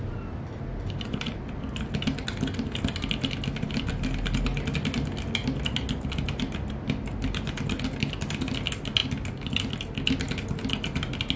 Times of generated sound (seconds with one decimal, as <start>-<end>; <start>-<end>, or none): none